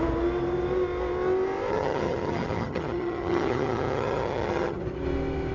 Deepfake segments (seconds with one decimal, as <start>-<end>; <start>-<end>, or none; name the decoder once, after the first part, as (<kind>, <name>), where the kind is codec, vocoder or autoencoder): 1.7-4.8 (vocoder, HiFi-GAN)